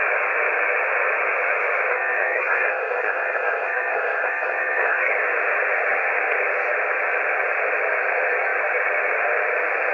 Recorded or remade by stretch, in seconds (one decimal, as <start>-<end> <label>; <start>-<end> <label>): 0.0-1.9 recorded; 1.9-5.1 remade; 5.1-9.9 recorded